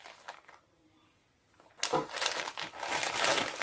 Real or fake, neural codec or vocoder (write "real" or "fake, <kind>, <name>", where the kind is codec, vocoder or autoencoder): real